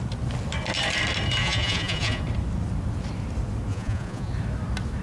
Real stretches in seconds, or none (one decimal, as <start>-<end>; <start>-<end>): 0.0-1.4; 2.2-3.7; 4.3-5.0